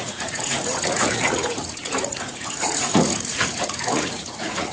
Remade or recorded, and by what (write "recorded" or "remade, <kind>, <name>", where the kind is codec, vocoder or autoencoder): remade, vocoder, Vocos